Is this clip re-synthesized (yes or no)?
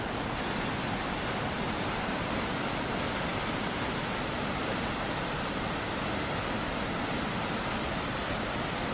no